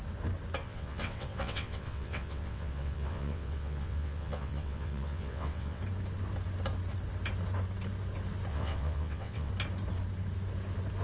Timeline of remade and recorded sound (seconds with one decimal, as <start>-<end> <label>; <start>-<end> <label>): 0.0-0.6 recorded; 0.6-5.8 remade; 5.8-8.5 recorded; 8.5-9.5 remade; 9.5-11.0 recorded